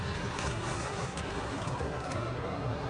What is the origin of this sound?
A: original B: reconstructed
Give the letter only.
B